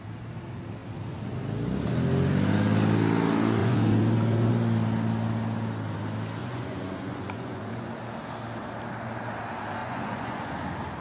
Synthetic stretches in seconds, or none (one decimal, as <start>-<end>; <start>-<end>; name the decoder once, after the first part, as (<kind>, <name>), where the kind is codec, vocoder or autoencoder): 3.6-4.5 (vocoder, Vocos); 6.4-7.9; 9.8-10.5